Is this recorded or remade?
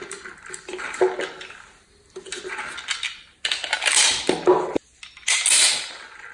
recorded